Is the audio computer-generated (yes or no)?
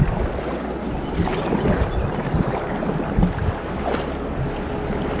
no